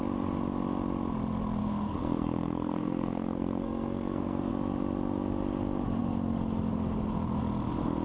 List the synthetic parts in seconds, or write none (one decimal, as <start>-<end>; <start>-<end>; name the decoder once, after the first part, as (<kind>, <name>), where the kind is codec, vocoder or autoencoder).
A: 1.6-4.5 (codec, SNAC)